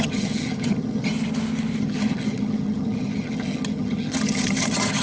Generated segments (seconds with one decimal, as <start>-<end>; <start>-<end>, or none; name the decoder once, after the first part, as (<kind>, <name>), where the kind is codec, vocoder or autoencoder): 0.0-1.1 (vocoder, HiFi-GAN); 1.8-5.0